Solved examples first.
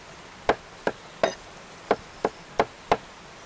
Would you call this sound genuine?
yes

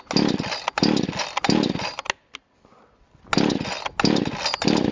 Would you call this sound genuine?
yes